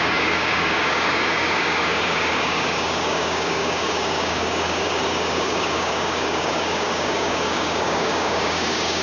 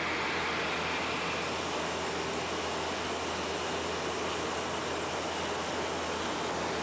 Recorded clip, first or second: second